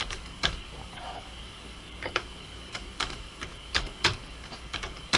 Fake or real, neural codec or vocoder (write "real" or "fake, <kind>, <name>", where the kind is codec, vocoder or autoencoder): fake, codec, DAC